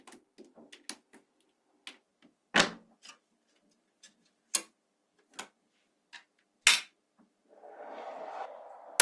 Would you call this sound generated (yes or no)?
no